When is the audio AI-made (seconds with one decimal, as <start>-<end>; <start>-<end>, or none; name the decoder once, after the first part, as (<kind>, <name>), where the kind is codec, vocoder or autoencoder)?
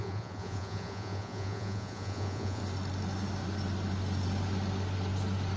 0.0-2.6 (vocoder, Vocos)